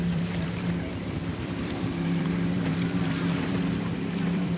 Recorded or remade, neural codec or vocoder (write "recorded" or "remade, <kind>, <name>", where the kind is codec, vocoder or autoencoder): remade, vocoder, BigVGAN v2